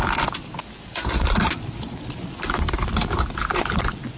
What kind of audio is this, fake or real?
real